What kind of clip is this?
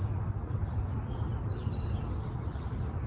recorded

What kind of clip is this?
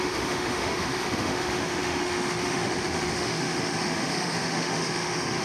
remade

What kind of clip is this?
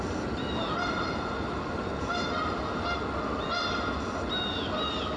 recorded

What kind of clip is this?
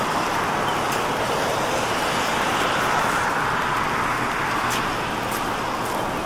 recorded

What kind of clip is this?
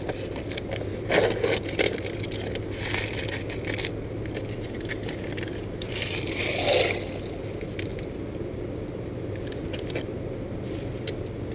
recorded